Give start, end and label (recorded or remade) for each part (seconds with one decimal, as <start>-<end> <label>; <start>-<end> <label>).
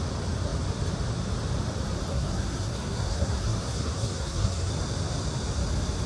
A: 0.0-2.1 recorded; 2.1-4.7 remade; 4.7-6.1 recorded